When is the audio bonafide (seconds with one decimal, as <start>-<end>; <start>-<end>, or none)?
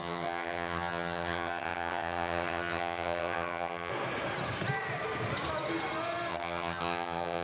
3.9-6.3